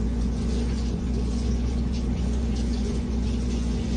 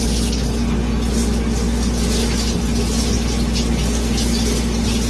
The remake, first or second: first